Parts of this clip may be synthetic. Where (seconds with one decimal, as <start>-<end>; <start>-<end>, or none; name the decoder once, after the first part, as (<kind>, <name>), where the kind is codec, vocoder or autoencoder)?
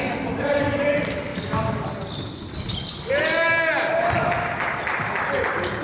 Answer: none